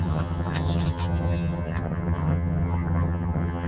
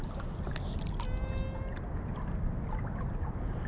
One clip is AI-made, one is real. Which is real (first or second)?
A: second